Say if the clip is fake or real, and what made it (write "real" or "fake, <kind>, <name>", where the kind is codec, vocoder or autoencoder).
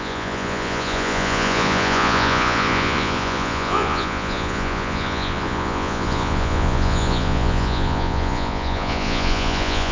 fake, vocoder, Vocos